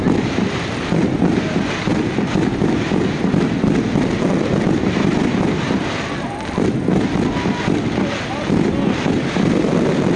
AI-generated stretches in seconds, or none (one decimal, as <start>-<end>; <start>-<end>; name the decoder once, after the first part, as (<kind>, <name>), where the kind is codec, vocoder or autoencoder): none